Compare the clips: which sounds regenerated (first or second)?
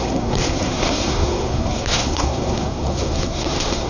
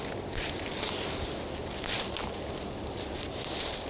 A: first